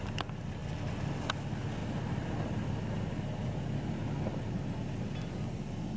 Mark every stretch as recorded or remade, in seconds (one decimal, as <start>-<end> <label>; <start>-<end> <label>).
0.0-6.0 recorded

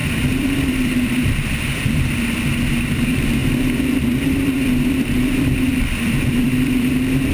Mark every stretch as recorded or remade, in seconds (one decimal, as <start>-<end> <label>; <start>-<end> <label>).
0.0-7.3 remade

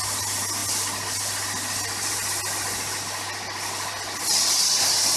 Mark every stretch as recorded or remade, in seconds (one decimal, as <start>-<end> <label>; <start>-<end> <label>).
0.0-5.2 recorded

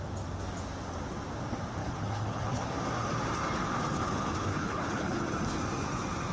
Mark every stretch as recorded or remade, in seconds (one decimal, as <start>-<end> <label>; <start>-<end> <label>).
0.0-1.8 recorded; 1.8-2.7 remade; 2.7-4.5 recorded; 4.5-5.2 remade; 5.2-6.3 recorded

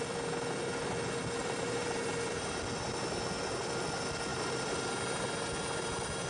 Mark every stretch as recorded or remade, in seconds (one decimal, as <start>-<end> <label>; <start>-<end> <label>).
0.0-1.4 recorded; 1.4-2.6 remade; 2.6-4.3 recorded; 4.3-4.8 remade; 4.8-6.3 recorded

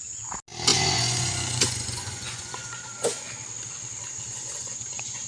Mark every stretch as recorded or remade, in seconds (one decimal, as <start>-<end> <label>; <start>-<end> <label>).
0.0-0.7 recorded; 0.7-3.3 remade; 3.3-4.3 recorded; 4.3-5.3 remade

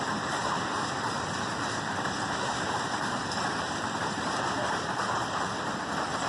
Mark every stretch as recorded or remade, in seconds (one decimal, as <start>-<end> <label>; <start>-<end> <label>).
0.0-6.3 remade